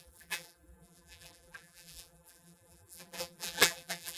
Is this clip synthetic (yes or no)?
yes